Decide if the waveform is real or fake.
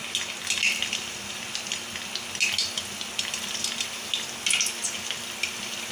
real